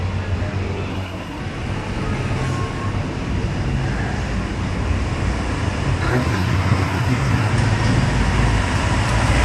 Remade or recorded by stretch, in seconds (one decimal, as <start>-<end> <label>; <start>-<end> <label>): 0.0-0.9 recorded; 0.9-1.4 remade; 1.4-6.1 recorded; 6.1-7.5 remade; 7.5-9.4 recorded